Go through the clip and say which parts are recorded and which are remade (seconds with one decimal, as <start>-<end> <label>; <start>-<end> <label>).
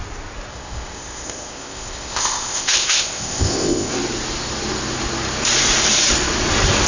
0.0-0.5 recorded; 0.5-3.9 remade; 3.9-6.9 recorded